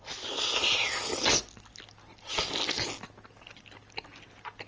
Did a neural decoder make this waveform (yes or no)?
no